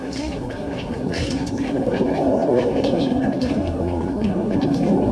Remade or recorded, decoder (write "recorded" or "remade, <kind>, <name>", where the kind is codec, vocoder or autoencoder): remade, codec, SNAC